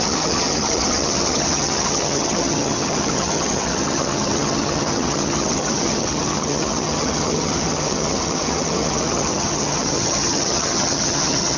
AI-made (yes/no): yes